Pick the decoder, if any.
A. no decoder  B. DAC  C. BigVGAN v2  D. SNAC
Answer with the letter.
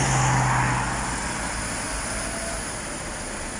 A